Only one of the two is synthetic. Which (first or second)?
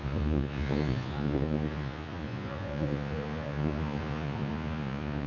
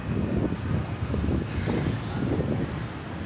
first